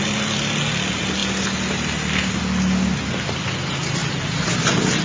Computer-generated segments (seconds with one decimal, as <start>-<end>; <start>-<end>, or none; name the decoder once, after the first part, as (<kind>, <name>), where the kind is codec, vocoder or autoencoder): none